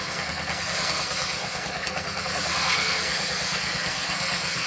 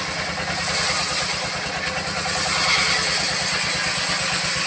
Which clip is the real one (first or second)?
second